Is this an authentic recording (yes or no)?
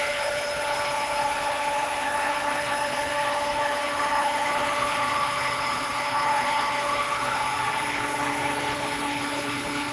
no